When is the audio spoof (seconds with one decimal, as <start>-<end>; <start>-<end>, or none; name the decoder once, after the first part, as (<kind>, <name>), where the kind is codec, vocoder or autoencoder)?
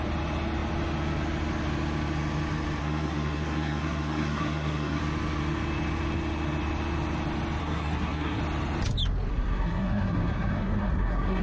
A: 2.8-5.0 (codec, SNAC); 7.6-8.4; 9.3-11.4